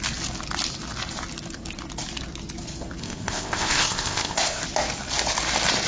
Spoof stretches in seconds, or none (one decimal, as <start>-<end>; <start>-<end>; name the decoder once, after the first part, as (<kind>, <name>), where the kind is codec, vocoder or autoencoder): 3.0-4.6 (codec, ZipCodec)